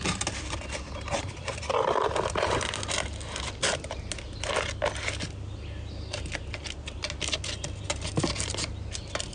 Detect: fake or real real